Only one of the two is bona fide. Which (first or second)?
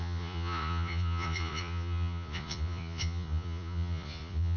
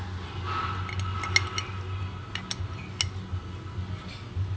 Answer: second